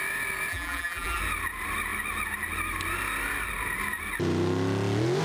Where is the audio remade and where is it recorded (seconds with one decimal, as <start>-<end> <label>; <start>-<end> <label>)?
0.0-0.5 recorded; 0.5-1.2 remade; 1.2-5.2 recorded